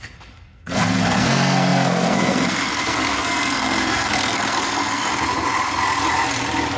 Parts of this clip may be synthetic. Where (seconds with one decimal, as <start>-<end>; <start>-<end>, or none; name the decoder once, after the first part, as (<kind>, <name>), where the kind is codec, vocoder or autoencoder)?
0.0-5.1 (codec, SNAC)